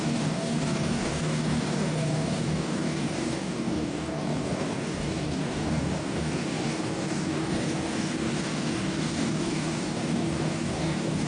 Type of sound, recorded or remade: remade